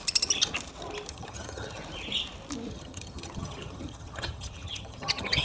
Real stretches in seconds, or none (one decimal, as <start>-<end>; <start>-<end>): 0.0-1.1; 1.8-2.7